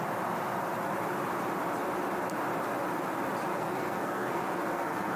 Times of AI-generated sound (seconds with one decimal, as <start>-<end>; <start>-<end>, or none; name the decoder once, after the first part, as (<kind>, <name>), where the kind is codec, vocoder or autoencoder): 3.5-5.2 (codec, SNAC)